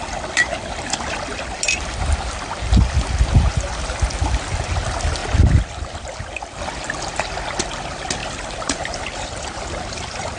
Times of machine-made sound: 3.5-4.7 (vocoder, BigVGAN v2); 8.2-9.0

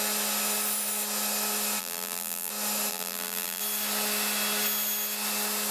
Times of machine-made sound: 1.8-2.5 (vocoder, BigVGAN v2); 2.9-3.6